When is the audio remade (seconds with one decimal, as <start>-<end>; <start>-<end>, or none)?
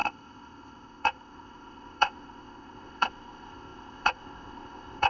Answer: 0.0-5.1